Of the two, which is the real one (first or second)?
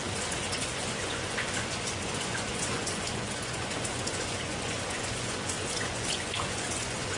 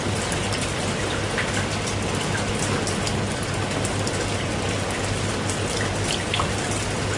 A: second